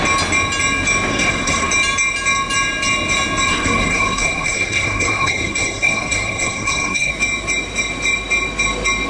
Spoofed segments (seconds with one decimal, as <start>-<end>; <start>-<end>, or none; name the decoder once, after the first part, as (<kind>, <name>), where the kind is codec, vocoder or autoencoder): 1.1-1.7 (codec, SNAC); 3.5-7.1